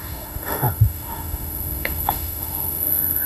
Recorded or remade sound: remade